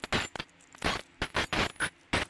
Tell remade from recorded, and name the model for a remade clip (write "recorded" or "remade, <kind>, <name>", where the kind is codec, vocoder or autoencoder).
recorded